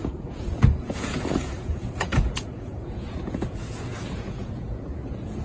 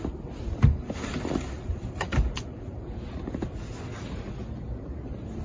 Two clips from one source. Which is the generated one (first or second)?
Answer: first